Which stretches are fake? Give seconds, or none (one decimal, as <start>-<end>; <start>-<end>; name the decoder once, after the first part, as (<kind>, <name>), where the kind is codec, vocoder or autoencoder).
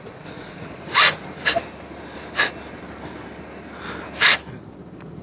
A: 0.0-1.4 (vocoder, Vocos); 4.5-5.2